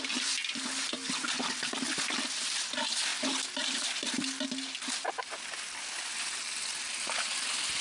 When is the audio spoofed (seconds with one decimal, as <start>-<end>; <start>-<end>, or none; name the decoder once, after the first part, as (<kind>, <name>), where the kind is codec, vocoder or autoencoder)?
none